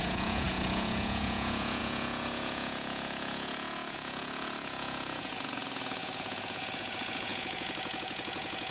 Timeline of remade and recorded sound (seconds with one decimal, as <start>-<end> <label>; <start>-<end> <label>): 0.0-8.7 remade